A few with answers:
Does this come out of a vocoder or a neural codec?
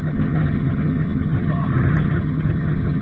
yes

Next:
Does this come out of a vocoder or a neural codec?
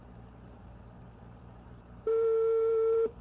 yes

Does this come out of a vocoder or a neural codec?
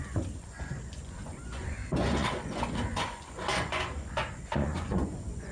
yes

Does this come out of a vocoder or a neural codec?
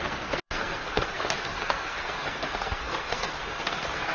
yes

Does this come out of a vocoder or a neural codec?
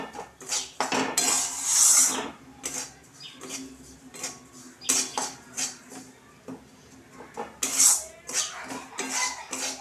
no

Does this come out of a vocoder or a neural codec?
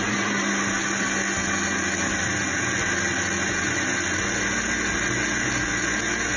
no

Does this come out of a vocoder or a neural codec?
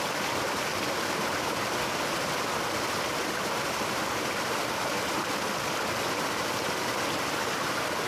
no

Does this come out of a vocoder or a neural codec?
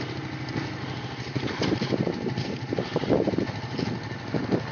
no